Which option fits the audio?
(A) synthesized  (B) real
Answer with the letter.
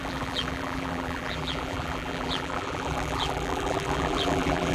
A